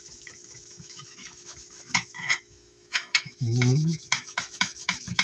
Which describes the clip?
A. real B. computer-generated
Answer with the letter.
B